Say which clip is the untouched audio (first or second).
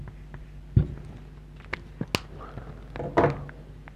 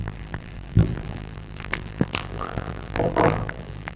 first